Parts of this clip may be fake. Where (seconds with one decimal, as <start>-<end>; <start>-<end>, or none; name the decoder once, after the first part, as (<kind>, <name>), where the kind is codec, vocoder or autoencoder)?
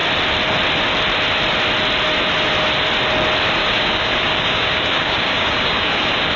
3.6-6.4 (codec, DAC)